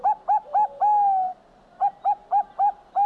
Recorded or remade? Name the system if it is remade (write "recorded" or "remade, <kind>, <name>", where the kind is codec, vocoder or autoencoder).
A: recorded